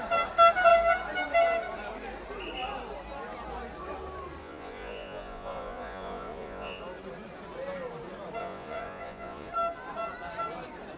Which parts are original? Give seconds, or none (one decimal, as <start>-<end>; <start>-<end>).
0.0-4.4; 6.8-8.4; 9.5-11.0